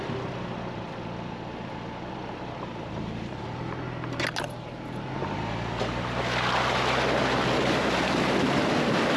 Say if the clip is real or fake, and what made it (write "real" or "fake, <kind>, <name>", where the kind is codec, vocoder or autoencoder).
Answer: real